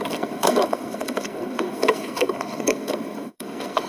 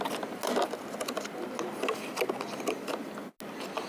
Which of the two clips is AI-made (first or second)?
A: first